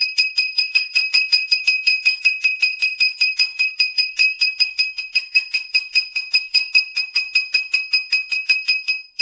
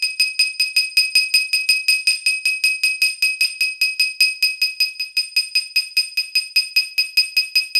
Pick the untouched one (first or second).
second